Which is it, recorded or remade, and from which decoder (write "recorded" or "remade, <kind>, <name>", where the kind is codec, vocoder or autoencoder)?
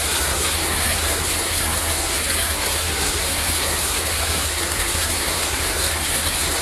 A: remade, codec, SNAC